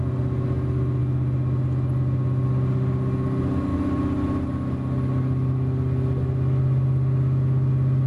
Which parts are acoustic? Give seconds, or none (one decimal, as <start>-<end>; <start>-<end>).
0.0-8.1